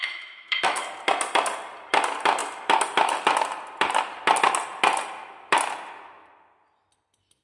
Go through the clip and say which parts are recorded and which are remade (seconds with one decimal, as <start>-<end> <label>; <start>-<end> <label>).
0.0-0.8 remade; 0.8-7.4 recorded